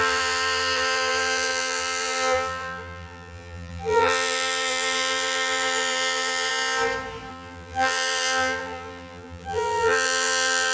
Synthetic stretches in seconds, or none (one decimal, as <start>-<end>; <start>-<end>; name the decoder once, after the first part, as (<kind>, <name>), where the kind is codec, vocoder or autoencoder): 0.0-6.5 (vocoder, BigVGAN v2); 7.3-10.7

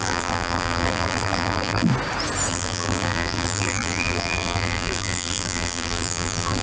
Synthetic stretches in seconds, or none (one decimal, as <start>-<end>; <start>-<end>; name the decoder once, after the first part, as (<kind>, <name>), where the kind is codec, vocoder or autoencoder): 0.0-1.9 (vocoder, BigVGAN v2); 2.5-6.6

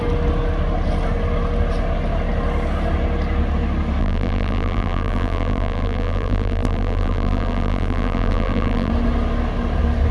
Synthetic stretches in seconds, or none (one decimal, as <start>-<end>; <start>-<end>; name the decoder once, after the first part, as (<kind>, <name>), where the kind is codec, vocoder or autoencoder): 4.0-8.9 (vocoder, BigVGAN v2)

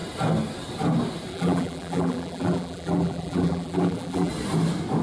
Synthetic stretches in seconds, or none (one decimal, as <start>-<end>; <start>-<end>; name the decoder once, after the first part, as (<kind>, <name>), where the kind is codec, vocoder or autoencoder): 1.3-4.3 (vocoder, BigVGAN v2)

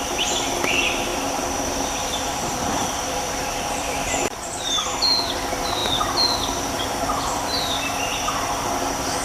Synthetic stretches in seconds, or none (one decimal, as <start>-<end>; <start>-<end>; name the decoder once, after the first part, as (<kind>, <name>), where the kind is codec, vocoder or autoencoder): 1.1-4.6 (vocoder, BigVGAN v2)

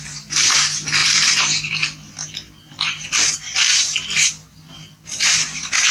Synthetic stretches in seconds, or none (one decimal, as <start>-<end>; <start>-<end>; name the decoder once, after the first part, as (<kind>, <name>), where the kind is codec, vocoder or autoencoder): none

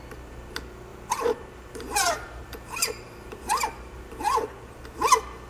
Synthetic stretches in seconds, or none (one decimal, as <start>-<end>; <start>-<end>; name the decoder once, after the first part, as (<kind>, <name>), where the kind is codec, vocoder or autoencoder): 0.9-4.2 (vocoder, BigVGAN v2)